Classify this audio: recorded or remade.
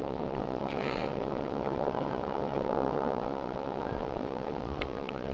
remade